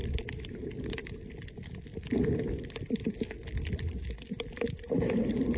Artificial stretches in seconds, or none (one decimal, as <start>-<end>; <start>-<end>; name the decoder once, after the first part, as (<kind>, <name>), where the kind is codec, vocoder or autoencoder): 0.0-1.3 (vocoder, BigVGAN v2)